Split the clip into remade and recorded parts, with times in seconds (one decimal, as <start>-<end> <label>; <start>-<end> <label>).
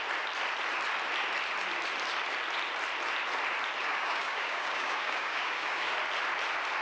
0.0-3.8 recorded; 3.8-5.9 remade; 5.9-6.8 recorded